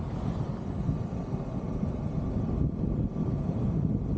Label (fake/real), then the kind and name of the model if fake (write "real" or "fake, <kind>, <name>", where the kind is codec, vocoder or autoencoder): real